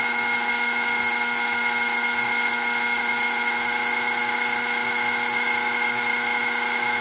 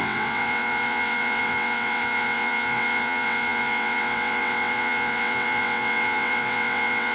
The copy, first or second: second